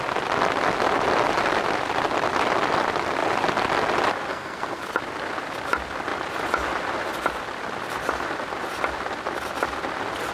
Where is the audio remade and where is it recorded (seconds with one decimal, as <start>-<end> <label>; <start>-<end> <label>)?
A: 0.0-4.3 recorded; 4.3-4.9 remade; 4.9-10.3 recorded